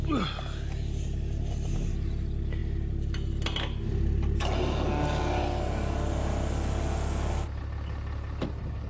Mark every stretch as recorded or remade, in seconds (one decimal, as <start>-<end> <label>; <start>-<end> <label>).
0.0-8.9 recorded